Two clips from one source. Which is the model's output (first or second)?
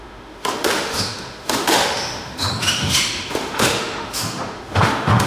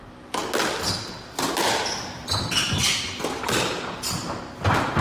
first